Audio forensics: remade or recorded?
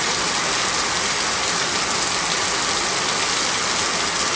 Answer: recorded